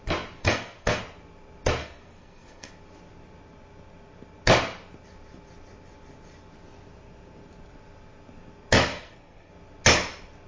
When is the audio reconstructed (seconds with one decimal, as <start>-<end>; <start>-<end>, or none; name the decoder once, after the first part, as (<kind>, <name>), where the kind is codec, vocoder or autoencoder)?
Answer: 0.4-1.0 (codec, SNAC); 1.8-2.7; 8.9-9.5